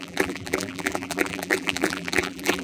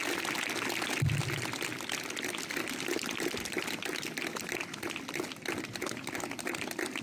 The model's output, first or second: first